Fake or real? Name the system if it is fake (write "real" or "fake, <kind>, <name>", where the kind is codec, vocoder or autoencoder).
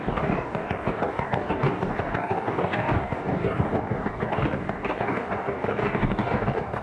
fake, codec, DAC